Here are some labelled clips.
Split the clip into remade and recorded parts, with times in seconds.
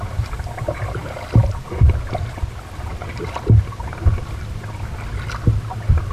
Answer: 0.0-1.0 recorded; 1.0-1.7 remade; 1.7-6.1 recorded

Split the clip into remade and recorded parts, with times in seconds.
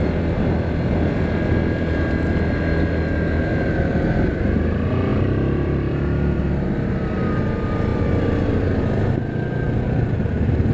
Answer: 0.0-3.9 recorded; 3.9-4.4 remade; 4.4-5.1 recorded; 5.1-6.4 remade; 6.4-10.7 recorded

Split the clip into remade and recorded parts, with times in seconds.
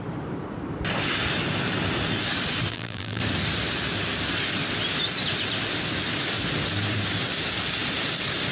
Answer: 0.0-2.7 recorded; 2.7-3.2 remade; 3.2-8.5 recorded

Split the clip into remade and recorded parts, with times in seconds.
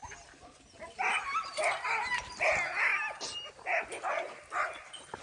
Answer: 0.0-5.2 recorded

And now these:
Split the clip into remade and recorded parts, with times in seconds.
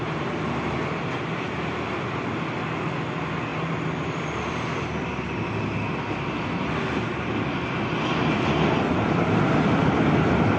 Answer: 0.0-3.5 recorded; 3.5-4.9 remade; 4.9-10.6 recorded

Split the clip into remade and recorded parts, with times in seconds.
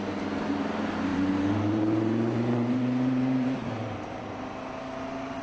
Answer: 0.0-1.1 recorded; 1.1-4.3 remade; 4.3-5.4 recorded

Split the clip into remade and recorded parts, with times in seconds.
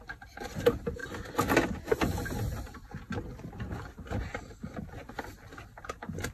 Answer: 0.0-6.3 recorded